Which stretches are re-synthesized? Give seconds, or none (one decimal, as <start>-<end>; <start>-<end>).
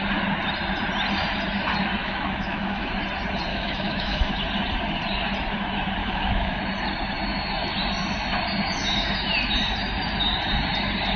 2.0-3.0; 3.5-4.3; 6.0-6.6